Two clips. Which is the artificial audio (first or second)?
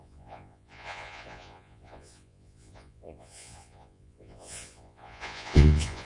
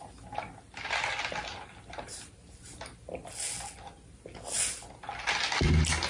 first